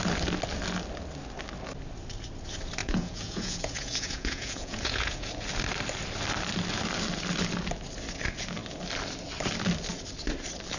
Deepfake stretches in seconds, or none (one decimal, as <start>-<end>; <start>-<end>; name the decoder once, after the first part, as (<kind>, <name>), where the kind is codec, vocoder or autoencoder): 2.8-5.3 (vocoder, Vocos)